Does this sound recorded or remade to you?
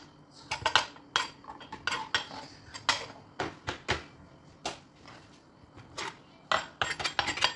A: recorded